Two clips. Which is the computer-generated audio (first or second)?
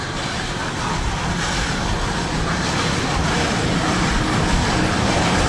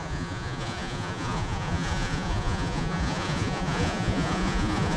second